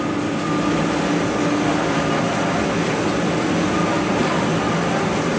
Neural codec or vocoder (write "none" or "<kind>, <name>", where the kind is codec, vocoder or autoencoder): none